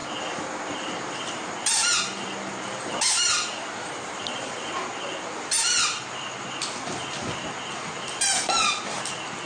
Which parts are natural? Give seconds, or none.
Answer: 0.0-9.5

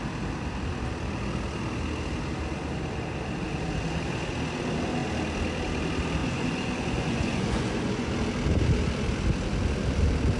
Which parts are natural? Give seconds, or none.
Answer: 0.0-6.2; 8.1-10.4

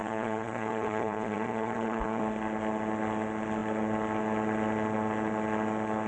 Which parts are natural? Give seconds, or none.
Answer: 2.2-6.1